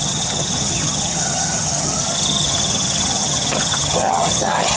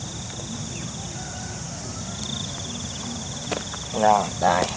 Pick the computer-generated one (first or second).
first